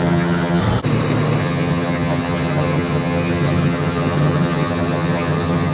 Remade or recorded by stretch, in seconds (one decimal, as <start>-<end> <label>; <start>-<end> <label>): 0.0-0.6 remade; 0.6-1.4 recorded; 1.4-5.7 remade